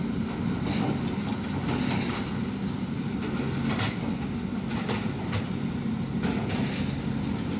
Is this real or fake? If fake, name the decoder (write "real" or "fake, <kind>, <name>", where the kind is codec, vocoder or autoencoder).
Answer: real